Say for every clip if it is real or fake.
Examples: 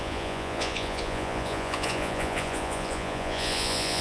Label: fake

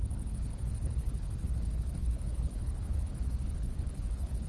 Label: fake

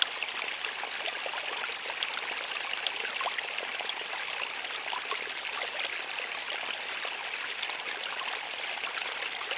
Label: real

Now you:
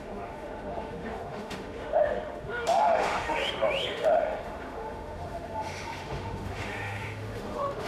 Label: fake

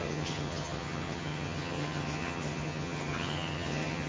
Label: fake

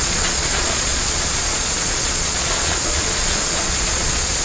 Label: fake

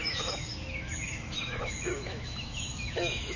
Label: fake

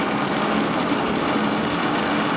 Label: real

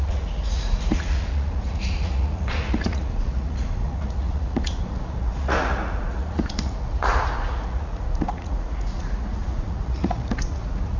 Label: fake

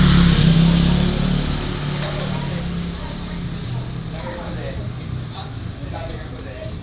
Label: real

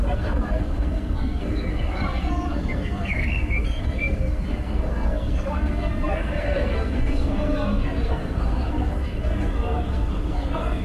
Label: fake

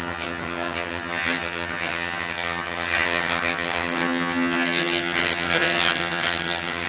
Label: fake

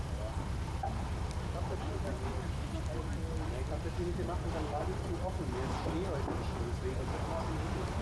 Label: real